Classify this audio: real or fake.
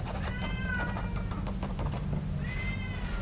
real